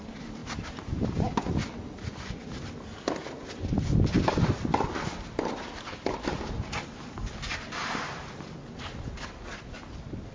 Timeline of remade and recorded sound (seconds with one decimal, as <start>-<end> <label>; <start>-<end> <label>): 0.0-10.3 recorded